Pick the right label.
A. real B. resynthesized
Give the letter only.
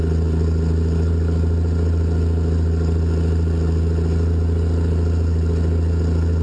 A